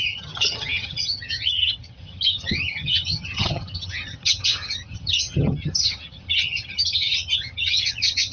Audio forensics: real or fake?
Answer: fake